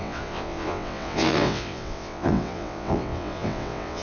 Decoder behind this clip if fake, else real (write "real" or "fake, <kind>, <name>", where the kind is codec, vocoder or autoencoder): fake, vocoder, WaveNeXt